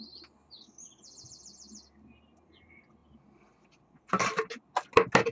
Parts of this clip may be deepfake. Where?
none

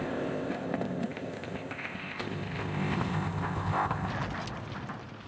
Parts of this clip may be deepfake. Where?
0.0-4.1 (codec, ZipCodec)

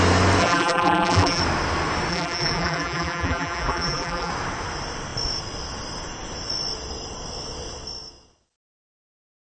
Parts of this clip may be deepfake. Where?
0.4-1.4 (vocoder, BigVGAN v2); 2.1-4.3

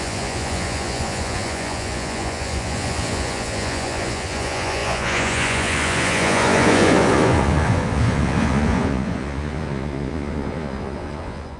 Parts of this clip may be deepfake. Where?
0.0-11.6 (vocoder, Vocos)

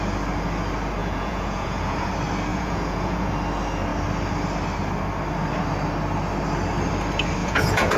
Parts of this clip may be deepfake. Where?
1.0-2.1 (vocoder, Vocos); 2.5-3.3; 7.4-8.0

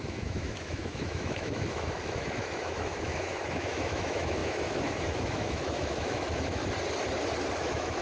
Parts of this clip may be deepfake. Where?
0.0-6.6 (autoencoder, DAC-VAE); 7.6-8.0

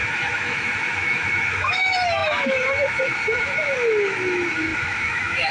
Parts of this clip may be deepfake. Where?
0.0-5.5 (autoencoder, DAC-VAE)

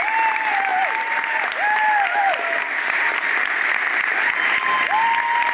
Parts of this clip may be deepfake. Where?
none